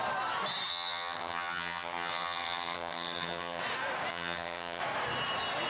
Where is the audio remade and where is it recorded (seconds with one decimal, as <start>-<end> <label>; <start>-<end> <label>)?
0.0-0.7 recorded; 0.7-3.6 remade; 3.6-4.1 recorded; 4.1-4.8 remade; 4.8-5.7 recorded